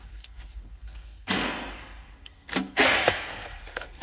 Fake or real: fake